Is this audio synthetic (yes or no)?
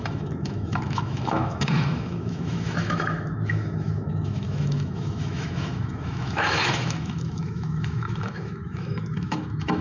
yes